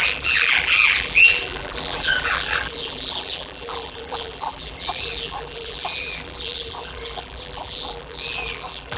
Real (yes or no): no